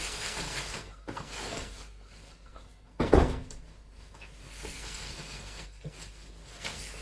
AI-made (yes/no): yes